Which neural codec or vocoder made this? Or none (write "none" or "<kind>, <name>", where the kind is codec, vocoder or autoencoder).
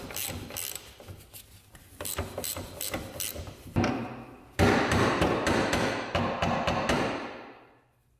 none